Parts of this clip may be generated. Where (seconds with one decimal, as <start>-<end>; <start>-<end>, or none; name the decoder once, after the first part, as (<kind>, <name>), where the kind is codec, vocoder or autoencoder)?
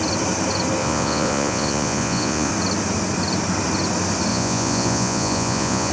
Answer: 0.8-2.5 (vocoder, Vocos); 4.3-5.9